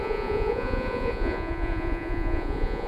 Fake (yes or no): yes